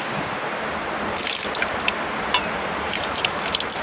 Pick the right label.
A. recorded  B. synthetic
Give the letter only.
A